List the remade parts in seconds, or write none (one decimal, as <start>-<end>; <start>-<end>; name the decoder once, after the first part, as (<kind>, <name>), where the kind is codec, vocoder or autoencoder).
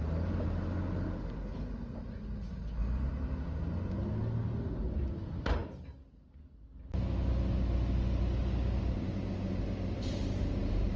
none